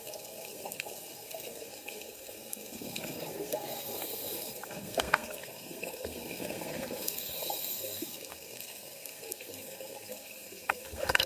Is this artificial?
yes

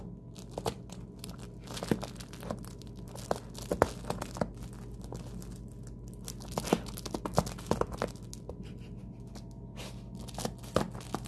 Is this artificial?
no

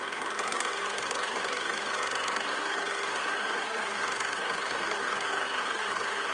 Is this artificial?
yes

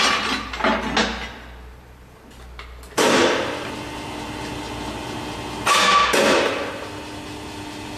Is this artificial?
no